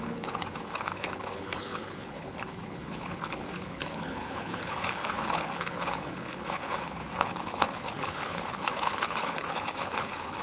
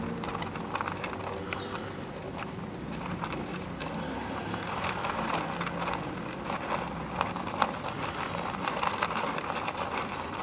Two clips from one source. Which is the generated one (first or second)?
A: first